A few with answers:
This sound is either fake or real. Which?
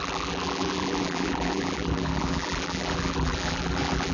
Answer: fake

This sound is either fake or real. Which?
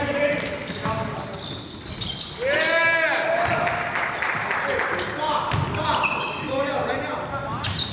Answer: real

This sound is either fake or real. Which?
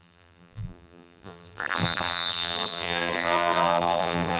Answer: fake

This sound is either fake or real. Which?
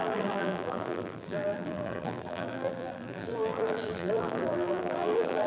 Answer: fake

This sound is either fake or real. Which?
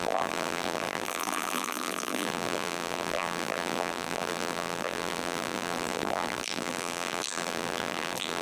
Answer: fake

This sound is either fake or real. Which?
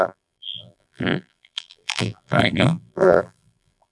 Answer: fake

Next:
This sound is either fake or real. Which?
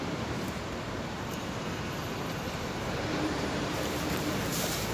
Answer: fake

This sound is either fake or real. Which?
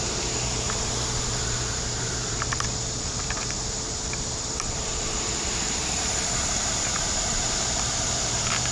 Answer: fake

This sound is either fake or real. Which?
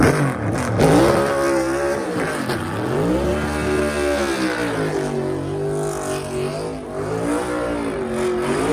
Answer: real